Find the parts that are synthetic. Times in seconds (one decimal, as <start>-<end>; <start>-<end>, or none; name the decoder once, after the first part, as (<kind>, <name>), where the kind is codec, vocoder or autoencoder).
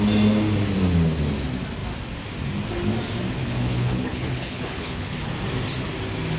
3.4-5.3 (codec, HILCodec)